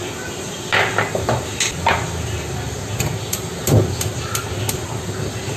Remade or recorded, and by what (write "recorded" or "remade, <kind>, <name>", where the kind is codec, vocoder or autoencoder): recorded